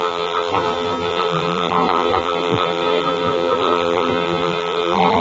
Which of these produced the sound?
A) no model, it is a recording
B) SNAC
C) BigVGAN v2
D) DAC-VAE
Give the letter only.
C